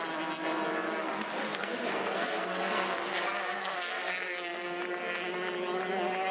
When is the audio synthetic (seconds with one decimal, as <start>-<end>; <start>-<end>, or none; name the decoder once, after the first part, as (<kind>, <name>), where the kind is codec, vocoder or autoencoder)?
1.0-4.8 (codec, SNAC)